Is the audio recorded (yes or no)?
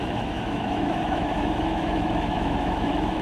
no